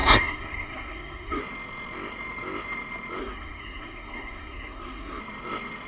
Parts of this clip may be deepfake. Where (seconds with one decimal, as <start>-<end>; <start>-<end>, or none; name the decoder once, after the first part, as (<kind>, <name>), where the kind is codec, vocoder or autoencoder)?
0.0-1.4 (codec, SNAC); 3.2-5.2